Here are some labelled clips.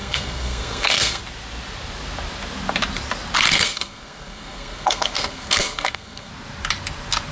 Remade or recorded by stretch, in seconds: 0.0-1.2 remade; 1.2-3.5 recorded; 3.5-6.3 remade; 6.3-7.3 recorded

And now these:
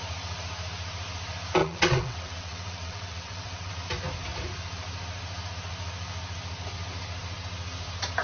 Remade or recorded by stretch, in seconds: 0.0-1.6 recorded; 1.6-3.7 remade; 3.7-8.2 recorded